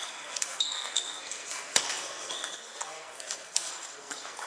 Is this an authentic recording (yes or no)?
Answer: no